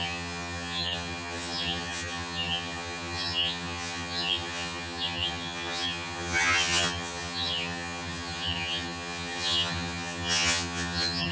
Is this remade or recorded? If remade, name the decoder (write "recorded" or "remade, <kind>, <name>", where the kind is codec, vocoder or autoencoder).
remade, vocoder, HiFi-GAN